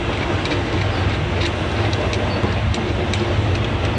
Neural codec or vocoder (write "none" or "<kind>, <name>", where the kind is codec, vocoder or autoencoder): none